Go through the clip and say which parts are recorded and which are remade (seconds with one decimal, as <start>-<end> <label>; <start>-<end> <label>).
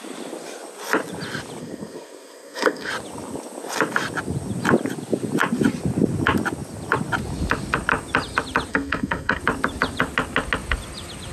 0.0-1.6 recorded; 1.6-2.9 remade; 2.9-8.7 recorded; 8.7-9.4 remade; 9.4-11.3 recorded